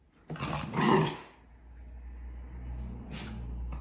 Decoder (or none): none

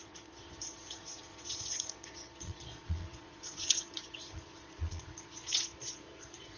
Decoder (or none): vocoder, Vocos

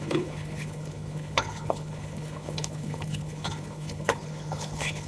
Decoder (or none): codec, HILCodec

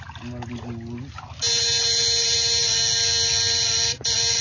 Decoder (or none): none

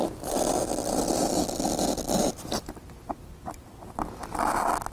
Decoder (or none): none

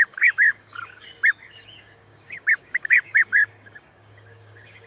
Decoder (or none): codec, DAC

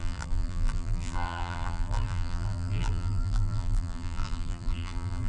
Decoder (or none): vocoder, BigVGAN v2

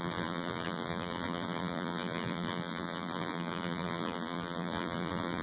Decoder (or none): vocoder, BigVGAN v2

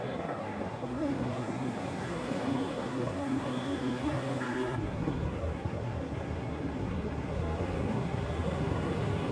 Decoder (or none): codec, SNAC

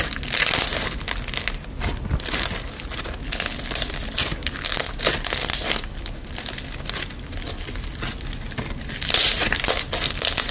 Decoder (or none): none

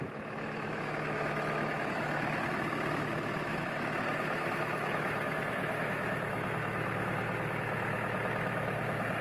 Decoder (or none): autoencoder, DAC-VAE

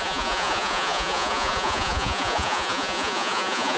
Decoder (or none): vocoder, Vocos